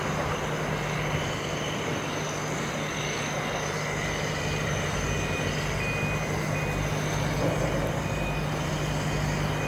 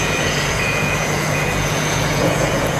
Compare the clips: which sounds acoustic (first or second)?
first